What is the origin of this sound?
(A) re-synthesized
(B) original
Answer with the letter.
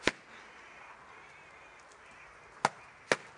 B